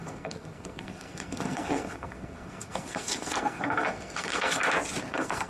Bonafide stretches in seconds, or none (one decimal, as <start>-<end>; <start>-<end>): 4.6-5.1